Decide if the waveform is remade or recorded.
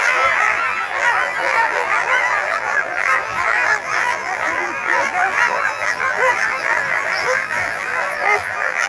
remade